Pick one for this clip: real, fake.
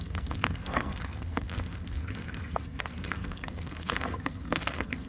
fake